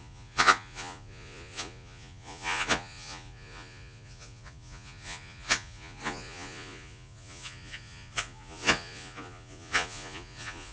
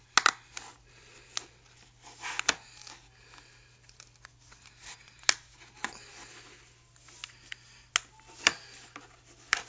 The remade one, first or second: first